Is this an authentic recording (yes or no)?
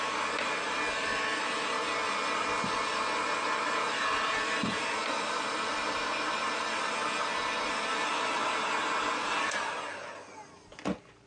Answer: yes